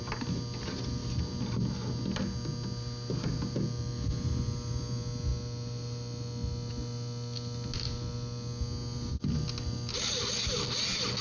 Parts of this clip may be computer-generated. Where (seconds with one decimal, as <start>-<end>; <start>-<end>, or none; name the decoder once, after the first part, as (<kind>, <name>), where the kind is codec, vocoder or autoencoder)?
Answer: none